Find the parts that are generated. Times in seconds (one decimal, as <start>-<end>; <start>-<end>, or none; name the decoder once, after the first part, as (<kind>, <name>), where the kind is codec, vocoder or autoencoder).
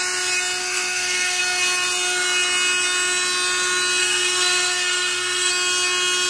0.6-1.4 (codec, SNAC); 4.0-5.5